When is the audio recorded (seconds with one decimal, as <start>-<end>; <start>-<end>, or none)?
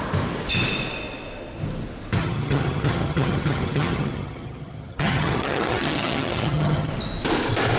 0.0-2.2; 6.9-7.8